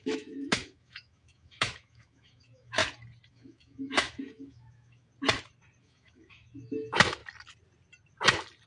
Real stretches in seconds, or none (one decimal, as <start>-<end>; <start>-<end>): 2.8-3.3; 5.1-5.8; 7.2-8.7